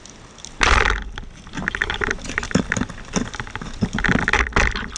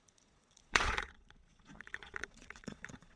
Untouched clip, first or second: first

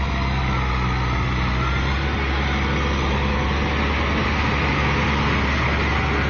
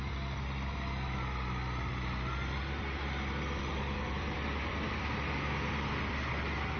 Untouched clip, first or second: first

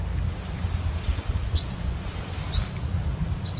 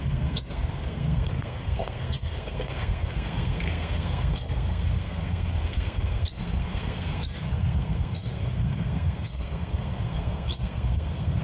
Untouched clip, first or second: first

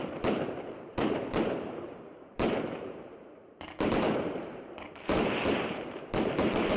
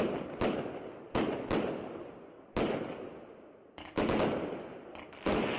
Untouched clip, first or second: second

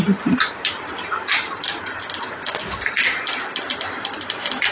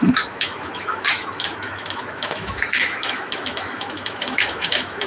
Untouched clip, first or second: first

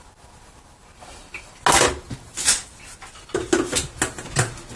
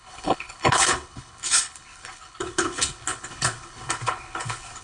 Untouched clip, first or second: first